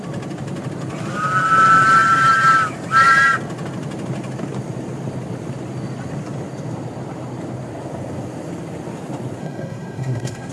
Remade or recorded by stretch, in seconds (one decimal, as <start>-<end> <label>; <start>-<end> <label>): 0.0-9.4 recorded; 9.4-10.5 remade